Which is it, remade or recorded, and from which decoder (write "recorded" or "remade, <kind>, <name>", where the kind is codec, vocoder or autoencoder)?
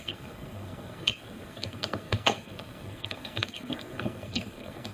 remade, codec, SNAC